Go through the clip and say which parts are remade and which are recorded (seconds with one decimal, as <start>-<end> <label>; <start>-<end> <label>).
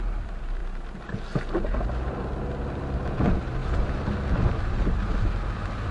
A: 0.0-0.6 remade; 0.6-1.6 recorded; 1.6-2.2 remade; 2.2-3.2 recorded; 3.2-5.9 remade